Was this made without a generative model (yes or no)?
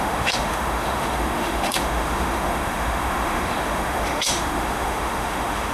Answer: no